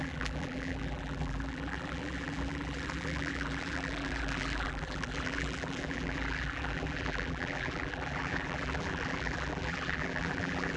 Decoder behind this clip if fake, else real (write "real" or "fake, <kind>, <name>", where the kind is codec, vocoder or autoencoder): fake, vocoder, BigVGAN v2